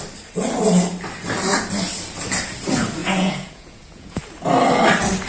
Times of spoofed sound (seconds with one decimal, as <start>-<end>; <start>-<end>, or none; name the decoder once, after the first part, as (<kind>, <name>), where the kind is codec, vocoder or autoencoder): 3.0-4.2 (vocoder, Vocos)